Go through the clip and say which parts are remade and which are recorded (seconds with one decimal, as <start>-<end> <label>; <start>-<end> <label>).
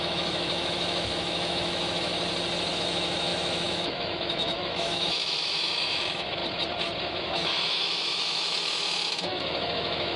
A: 0.0-2.1 remade; 2.1-2.7 recorded; 2.7-6.4 remade; 6.4-7.1 recorded; 7.1-10.2 remade